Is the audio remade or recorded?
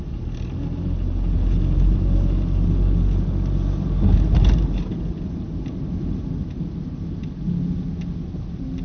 recorded